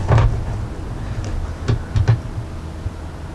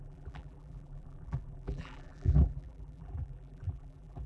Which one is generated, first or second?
second